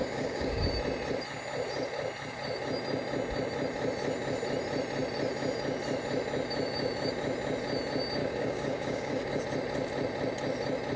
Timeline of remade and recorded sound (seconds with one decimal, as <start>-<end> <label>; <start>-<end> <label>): 0.0-0.7 remade; 0.7-8.2 recorded; 8.2-9.4 remade; 9.4-11.0 recorded